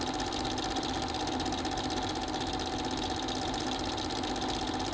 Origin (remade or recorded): recorded